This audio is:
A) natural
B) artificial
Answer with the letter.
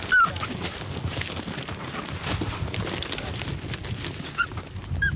A